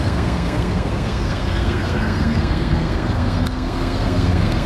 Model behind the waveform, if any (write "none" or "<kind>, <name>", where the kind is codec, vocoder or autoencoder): codec, SNAC